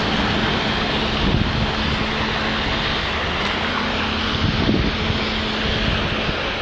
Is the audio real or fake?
real